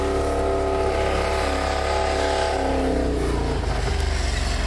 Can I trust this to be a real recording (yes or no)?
yes